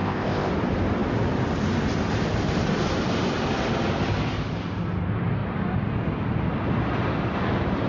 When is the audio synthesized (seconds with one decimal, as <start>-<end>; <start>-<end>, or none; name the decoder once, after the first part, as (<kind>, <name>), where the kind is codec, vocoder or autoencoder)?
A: 0.0-0.5 (codec, ZipCodec)